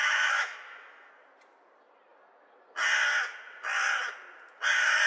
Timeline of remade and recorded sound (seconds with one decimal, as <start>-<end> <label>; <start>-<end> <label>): 0.0-1.1 remade; 1.1-5.1 recorded